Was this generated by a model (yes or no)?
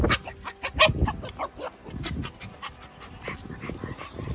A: no